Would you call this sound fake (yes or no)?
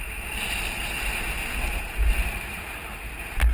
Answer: no